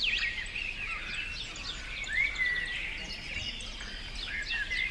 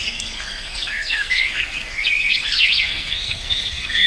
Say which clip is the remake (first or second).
second